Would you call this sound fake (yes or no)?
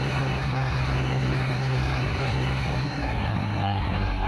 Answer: yes